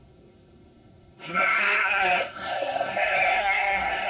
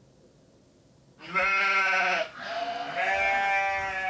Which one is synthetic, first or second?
first